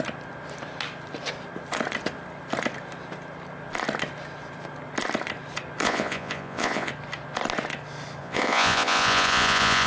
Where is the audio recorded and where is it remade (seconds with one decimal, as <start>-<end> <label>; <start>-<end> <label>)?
0.0-5.8 recorded; 5.8-6.9 remade; 6.9-8.2 recorded; 8.2-9.9 remade